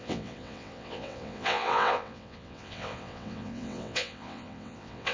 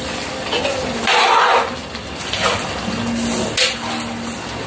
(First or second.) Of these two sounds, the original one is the second